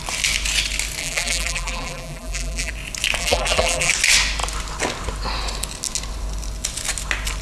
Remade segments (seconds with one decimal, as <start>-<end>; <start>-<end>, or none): 1.0-2.7; 3.2-3.9